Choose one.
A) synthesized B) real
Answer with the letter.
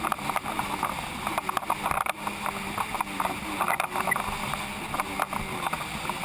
B